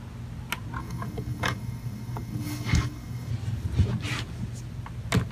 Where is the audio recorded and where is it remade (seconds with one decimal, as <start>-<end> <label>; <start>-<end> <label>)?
0.0-0.8 recorded; 0.8-3.3 remade; 3.3-5.3 recorded